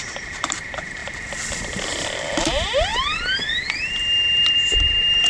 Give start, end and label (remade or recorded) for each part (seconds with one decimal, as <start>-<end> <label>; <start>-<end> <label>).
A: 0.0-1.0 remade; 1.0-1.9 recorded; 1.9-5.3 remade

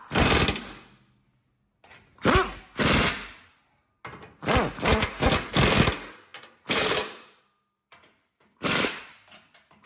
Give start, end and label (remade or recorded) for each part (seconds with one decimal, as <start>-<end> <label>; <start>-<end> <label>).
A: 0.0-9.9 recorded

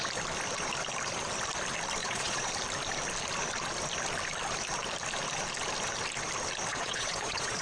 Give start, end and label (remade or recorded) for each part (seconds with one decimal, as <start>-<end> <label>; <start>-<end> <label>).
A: 0.0-2.0 recorded; 2.0-2.5 remade; 2.5-6.7 recorded; 6.7-7.6 remade